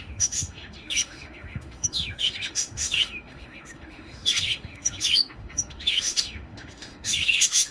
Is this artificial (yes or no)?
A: yes